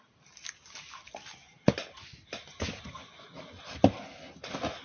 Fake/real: real